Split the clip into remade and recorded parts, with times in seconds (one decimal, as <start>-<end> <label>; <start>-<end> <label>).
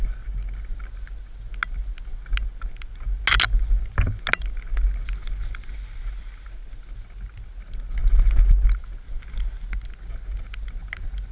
0.0-11.3 recorded